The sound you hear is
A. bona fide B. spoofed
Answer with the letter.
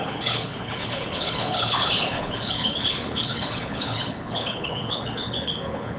B